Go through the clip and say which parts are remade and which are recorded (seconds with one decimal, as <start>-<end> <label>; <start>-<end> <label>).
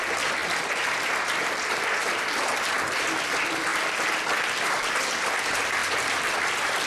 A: 0.0-3.7 recorded; 3.7-5.0 remade; 5.0-5.8 recorded; 5.8-6.9 remade